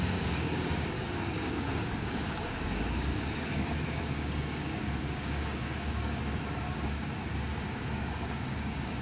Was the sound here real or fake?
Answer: fake